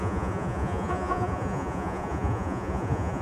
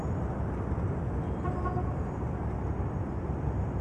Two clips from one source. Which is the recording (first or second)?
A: second